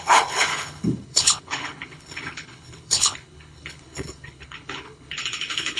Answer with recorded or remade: remade